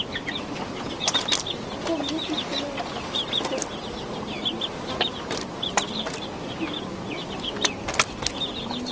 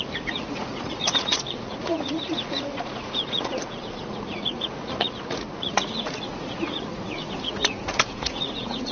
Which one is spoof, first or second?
second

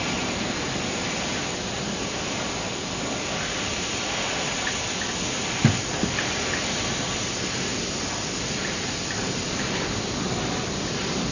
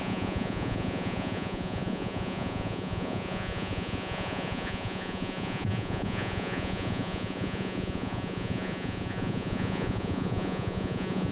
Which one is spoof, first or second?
second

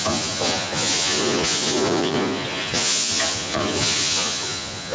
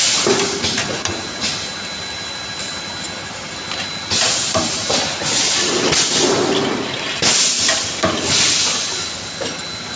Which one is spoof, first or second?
first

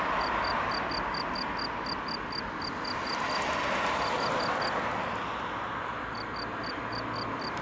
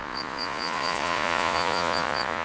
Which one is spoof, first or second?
second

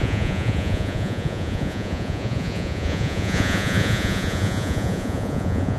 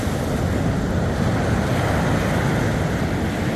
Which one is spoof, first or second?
first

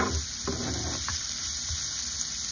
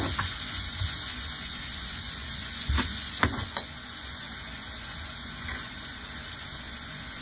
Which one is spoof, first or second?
second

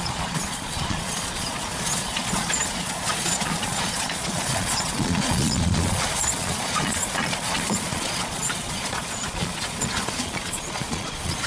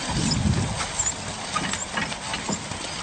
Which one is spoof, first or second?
first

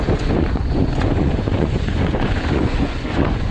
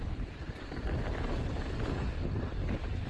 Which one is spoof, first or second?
first